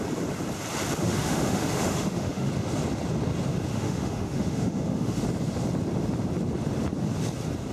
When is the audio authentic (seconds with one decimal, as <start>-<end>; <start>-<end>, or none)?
0.0-1.0; 2.5-3.7; 5.2-7.7